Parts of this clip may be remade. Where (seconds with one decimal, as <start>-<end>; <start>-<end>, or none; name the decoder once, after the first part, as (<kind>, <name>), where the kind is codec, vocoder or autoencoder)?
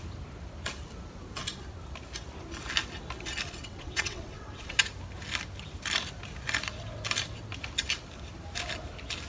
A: 3.6-4.8 (vocoder, WaveNeXt)